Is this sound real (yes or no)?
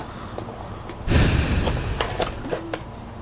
yes